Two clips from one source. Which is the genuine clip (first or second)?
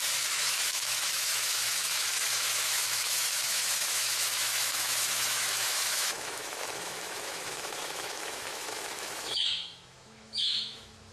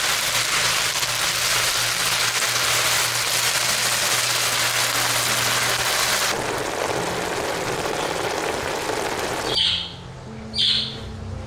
second